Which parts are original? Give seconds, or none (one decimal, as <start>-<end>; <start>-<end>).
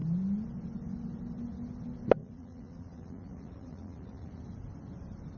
0.0-2.2; 4.4-5.4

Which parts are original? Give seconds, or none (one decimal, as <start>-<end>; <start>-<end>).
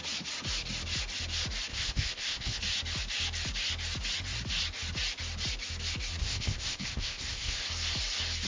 0.0-1.7; 2.6-6.2; 7.6-8.5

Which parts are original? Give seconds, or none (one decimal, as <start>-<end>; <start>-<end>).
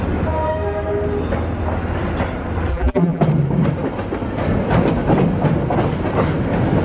0.0-2.7; 3.2-6.8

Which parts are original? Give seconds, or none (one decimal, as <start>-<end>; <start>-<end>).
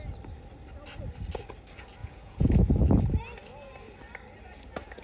0.0-2.0; 2.8-5.0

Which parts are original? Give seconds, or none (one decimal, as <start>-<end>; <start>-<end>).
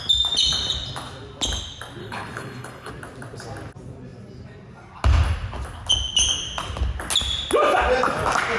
0.0-2.0; 2.9-8.6